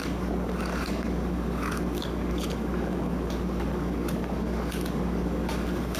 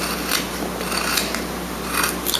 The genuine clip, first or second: second